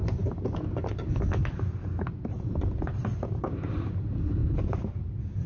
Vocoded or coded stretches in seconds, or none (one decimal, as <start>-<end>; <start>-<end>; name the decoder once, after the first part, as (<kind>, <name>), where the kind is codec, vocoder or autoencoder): none